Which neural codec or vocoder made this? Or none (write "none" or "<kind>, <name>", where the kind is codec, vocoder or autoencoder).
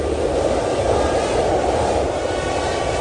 vocoder, BigVGAN v2